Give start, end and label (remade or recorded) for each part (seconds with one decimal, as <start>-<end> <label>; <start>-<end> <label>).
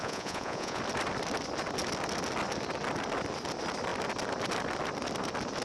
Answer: 0.0-0.8 remade; 0.8-5.6 recorded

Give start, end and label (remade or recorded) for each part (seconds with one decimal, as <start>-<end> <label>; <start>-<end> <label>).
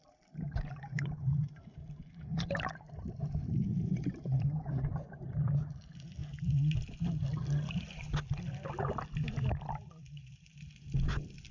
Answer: 0.0-6.2 remade; 6.2-9.5 recorded; 9.5-11.5 remade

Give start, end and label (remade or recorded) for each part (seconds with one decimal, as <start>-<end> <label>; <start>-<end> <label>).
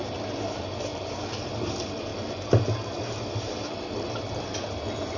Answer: 0.0-5.2 recorded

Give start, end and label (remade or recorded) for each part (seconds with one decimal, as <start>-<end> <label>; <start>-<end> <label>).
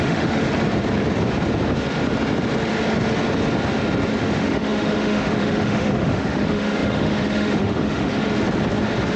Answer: 0.0-0.4 remade; 0.4-4.2 recorded; 4.2-8.1 remade; 8.1-9.2 recorded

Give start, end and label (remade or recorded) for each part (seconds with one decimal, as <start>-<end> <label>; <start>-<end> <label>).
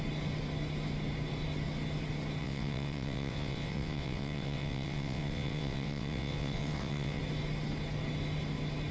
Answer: 0.0-2.4 recorded; 2.4-7.2 remade; 7.2-8.9 recorded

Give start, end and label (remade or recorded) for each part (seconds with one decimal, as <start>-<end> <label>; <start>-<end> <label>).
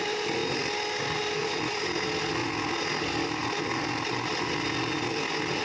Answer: 0.0-5.6 recorded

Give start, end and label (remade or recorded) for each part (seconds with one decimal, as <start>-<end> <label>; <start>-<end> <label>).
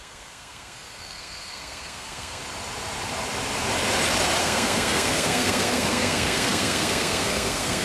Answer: 0.0-2.4 remade; 2.4-4.4 recorded; 4.4-7.8 remade